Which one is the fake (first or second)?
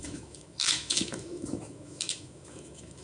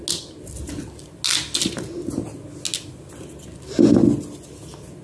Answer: first